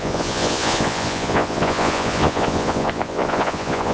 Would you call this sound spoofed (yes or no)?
yes